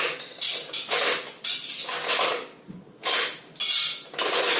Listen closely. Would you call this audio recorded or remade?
recorded